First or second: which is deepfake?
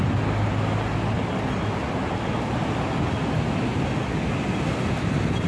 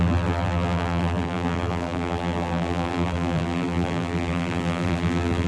second